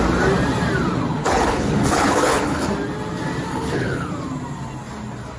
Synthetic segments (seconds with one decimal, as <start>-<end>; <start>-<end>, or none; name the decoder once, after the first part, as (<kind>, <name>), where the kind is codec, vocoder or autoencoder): 1.2-2.7 (codec, HILCodec); 3.5-4.1